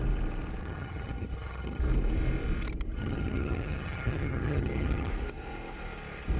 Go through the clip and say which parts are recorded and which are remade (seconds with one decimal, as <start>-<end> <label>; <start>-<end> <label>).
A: 0.0-0.6 recorded; 0.6-1.8 remade; 1.8-3.0 recorded; 3.0-5.1 remade; 5.1-6.4 recorded